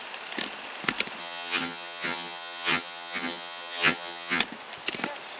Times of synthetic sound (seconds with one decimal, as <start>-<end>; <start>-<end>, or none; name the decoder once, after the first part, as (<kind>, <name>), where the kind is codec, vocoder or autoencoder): 1.2-4.4 (vocoder, HiFi-GAN)